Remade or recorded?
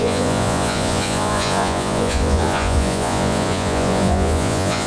remade